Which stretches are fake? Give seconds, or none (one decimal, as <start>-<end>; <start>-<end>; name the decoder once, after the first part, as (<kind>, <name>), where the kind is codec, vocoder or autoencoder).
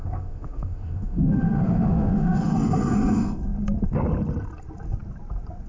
0.0-2.5 (autoencoder, DAC-VAE)